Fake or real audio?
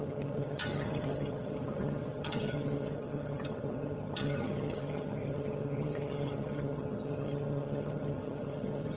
fake